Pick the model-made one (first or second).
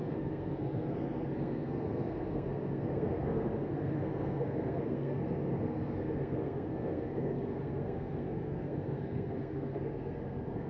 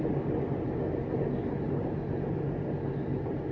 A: first